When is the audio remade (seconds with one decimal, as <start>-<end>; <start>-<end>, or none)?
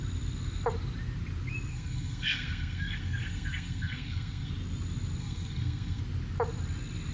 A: 1.7-4.5; 5.2-6.0